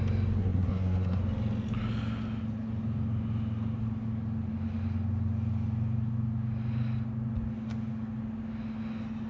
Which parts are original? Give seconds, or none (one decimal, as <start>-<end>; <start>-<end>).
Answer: 0.0-0.4; 1.2-9.3